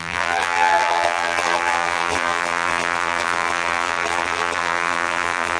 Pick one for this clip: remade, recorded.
remade